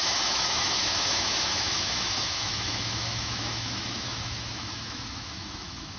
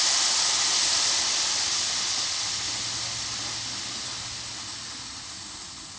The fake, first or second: first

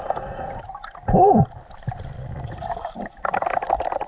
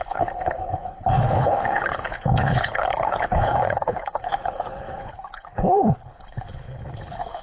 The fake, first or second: second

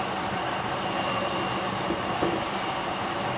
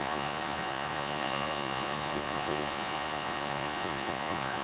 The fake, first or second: second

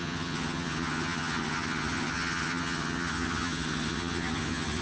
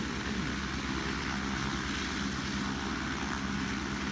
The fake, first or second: first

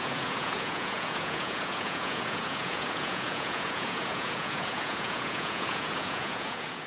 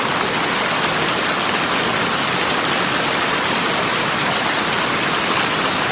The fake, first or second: first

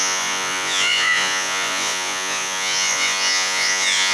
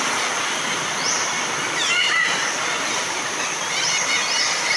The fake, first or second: first